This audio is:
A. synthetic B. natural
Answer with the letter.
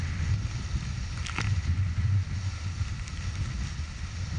B